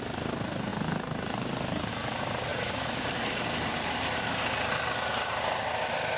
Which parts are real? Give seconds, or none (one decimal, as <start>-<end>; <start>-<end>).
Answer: 0.0-6.2